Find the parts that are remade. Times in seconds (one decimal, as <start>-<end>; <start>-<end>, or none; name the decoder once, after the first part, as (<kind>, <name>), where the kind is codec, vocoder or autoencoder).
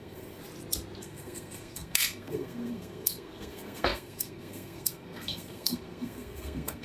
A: 0.0-0.4 (codec, SNAC); 1.0-6.8